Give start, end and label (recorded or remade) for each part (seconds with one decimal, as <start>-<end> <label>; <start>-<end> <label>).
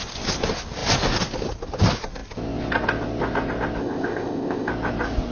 0.0-3.8 recorded; 3.8-4.7 remade; 4.7-5.3 recorded